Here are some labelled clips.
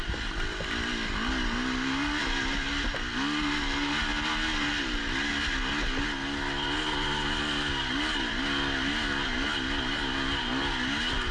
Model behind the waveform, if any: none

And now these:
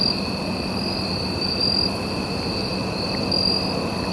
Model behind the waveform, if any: none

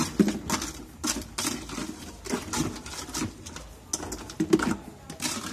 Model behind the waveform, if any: none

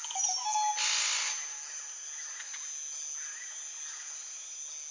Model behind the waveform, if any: none